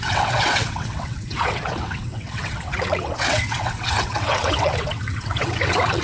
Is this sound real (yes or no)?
no